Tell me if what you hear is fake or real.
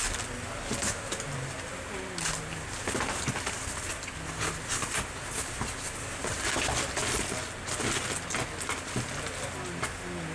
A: real